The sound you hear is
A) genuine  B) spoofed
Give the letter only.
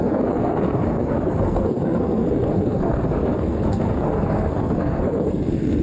B